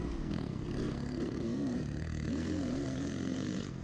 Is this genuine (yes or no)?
no